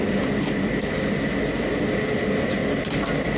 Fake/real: real